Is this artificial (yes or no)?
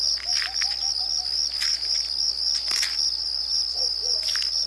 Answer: no